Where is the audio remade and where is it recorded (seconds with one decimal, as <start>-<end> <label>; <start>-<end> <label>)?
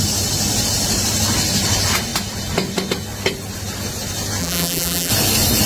0.0-4.4 recorded; 4.4-5.1 remade; 5.1-5.7 recorded